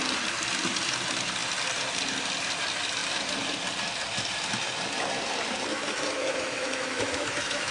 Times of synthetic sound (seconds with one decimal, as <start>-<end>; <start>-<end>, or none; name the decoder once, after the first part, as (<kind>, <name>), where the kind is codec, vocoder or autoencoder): 5.7-7.7 (autoencoder, DAC-VAE)